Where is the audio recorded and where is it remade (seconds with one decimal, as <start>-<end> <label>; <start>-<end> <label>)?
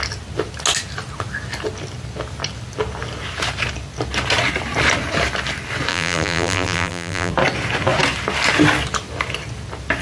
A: 0.0-5.9 recorded; 5.9-7.3 remade; 7.3-10.0 recorded